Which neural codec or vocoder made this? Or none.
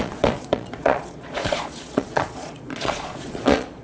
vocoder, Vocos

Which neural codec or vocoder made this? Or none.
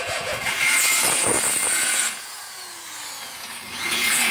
vocoder, Vocos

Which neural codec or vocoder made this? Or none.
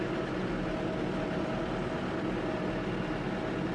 none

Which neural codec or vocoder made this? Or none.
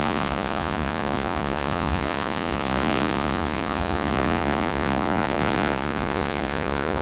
vocoder, Vocos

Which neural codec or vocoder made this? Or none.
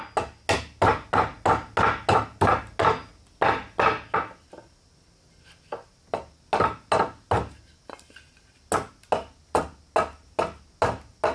none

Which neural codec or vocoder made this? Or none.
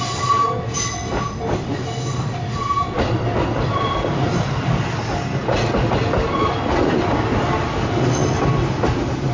none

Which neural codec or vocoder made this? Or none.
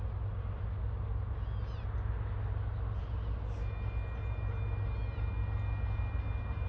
none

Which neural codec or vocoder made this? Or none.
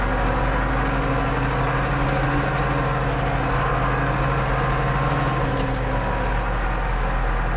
none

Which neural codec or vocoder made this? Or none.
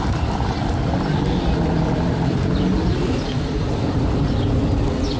none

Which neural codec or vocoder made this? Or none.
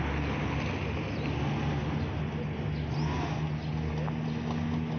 none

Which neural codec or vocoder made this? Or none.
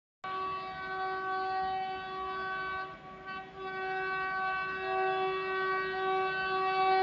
none